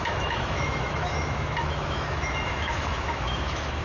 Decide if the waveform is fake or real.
fake